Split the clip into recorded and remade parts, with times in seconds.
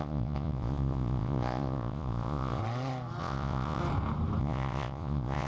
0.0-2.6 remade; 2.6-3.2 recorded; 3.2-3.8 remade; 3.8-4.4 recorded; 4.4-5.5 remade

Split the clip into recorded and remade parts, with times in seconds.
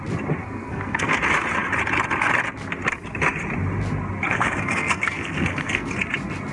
0.0-0.4 recorded; 0.4-1.2 remade; 1.2-4.3 recorded; 4.3-5.9 remade; 5.9-6.5 recorded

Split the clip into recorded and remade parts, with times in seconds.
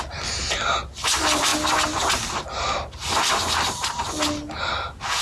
0.0-5.2 recorded